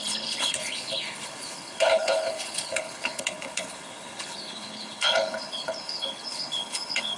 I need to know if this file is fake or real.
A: fake